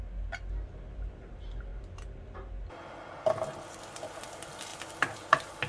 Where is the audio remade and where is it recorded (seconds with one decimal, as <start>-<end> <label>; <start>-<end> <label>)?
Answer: 0.0-5.7 recorded